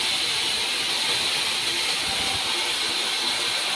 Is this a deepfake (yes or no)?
no